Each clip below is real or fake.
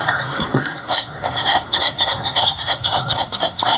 fake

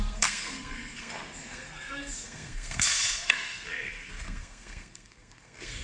fake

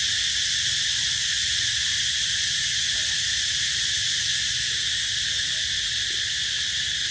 real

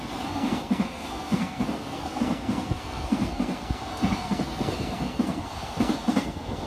fake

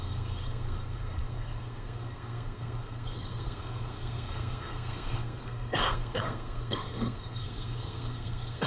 fake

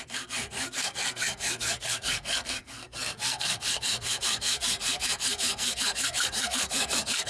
fake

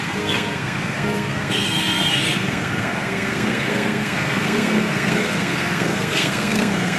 fake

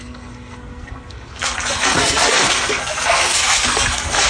fake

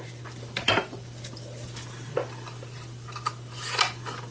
real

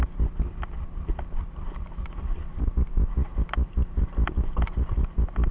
real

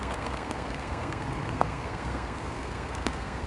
fake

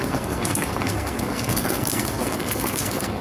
fake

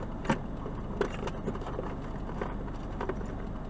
real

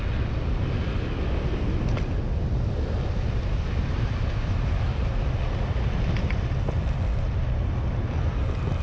real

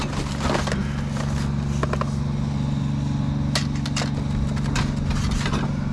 real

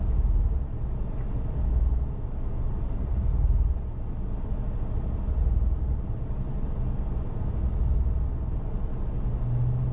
real